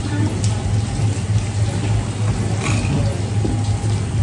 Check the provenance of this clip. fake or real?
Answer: real